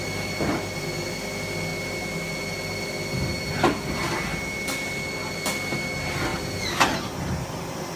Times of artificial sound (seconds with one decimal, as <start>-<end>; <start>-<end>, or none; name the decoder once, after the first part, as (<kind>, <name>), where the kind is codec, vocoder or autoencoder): 1.7-2.3 (vocoder, BigVGAN v2)